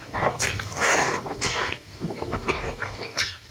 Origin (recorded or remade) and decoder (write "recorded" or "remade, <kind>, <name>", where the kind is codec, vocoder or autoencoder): remade, codec, DAC